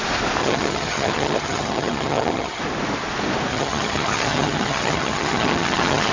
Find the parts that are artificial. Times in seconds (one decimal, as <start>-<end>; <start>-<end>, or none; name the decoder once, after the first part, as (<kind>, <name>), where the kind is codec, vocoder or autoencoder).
0.4-2.6 (vocoder, HiFi-GAN); 3.5-6.1